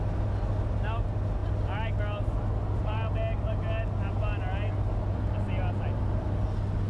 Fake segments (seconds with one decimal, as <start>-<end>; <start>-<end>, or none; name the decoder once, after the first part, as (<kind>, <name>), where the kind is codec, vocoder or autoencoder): none